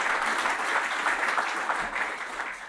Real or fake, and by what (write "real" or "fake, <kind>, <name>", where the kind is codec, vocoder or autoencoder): real